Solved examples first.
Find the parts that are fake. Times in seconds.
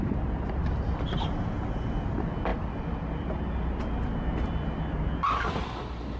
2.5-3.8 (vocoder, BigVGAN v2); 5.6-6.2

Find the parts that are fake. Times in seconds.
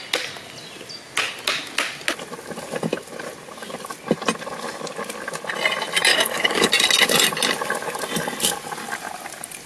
6.1-6.7 (codec, DAC)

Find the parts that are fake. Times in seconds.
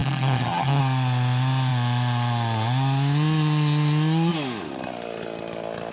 0.0-0.8 (vocoder, HiFi-GAN)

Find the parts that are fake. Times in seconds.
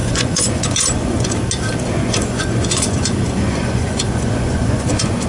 0.0-1.3 (vocoder, Vocos); 2.0-5.3